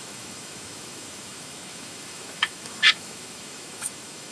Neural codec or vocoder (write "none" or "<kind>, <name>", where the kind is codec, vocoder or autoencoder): autoencoder, DAC-VAE